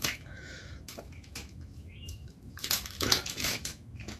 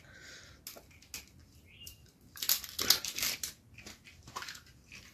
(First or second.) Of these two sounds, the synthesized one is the first